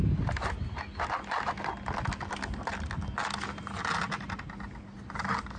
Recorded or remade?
recorded